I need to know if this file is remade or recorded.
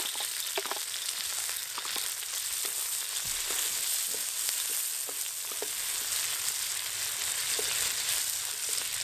recorded